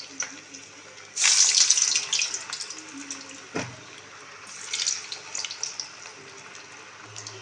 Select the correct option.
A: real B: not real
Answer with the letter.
A